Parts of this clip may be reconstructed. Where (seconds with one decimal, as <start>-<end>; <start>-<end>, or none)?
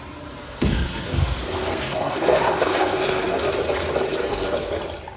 0.4-3.5; 4.2-4.7